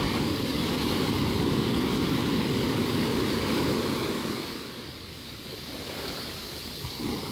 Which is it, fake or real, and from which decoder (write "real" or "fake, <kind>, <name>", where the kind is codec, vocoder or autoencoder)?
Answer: fake, codec, DAC